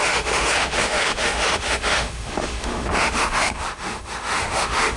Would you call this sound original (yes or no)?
no